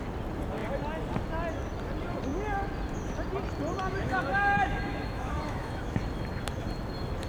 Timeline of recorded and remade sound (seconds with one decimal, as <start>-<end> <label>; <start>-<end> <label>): 0.0-3.9 recorded; 3.9-6.0 remade; 6.0-7.3 recorded